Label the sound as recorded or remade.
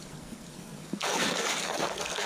remade